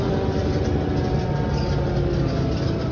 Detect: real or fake real